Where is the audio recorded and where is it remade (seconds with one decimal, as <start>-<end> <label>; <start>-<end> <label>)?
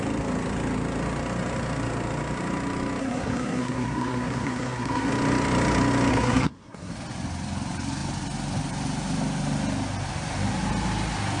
0.0-3.0 recorded; 3.0-5.1 remade; 5.1-6.1 recorded; 6.1-6.9 remade; 6.9-11.4 recorded